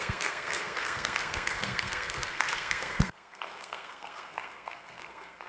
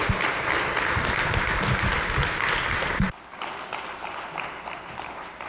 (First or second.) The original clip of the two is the second